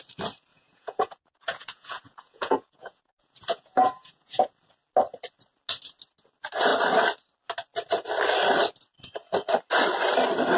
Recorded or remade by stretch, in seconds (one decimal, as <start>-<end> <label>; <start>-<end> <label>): 0.0-0.5 recorded; 0.5-4.5 remade; 4.5-10.6 recorded